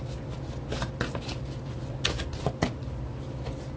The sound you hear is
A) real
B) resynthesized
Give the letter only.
A